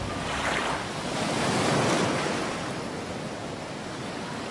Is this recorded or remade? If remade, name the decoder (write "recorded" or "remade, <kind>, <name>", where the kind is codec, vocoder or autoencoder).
recorded